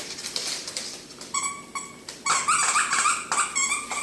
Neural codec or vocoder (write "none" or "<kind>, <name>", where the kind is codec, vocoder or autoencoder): none